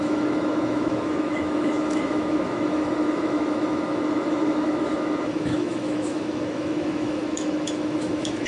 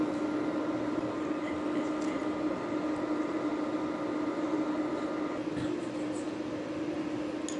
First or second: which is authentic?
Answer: second